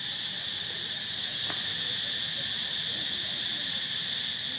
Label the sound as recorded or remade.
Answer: recorded